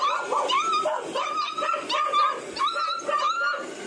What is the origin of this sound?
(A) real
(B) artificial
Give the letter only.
A